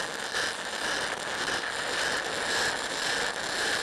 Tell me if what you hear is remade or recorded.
recorded